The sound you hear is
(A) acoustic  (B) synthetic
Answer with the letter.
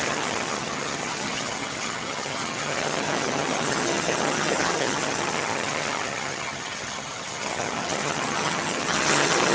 B